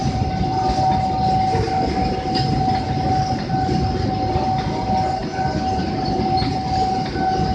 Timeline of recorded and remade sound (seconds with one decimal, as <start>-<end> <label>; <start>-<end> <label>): 0.0-7.5 recorded